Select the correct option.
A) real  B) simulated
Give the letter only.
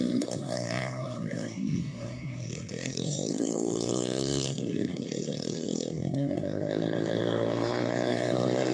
B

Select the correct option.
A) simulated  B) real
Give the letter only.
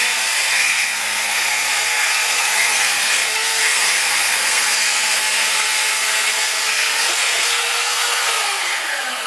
A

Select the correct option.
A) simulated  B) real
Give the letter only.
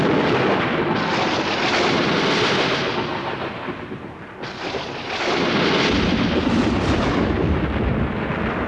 B